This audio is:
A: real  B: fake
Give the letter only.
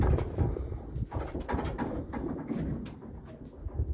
A